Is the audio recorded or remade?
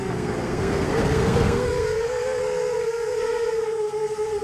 remade